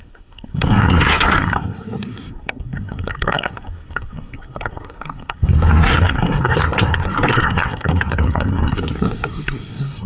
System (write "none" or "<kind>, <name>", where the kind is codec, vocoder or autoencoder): codec, SNAC